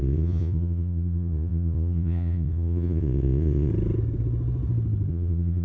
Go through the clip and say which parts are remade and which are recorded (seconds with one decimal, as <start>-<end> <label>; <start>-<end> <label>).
0.0-3.7 remade; 3.7-5.1 recorded; 5.1-5.6 remade